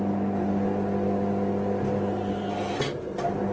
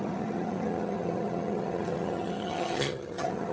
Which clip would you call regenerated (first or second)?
second